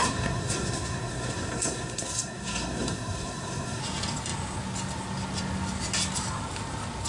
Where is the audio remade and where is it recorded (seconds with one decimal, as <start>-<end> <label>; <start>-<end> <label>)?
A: 0.0-3.8 remade; 3.8-7.1 recorded